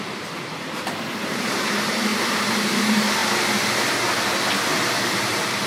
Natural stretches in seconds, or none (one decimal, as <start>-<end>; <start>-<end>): 2.1-2.8; 3.2-5.0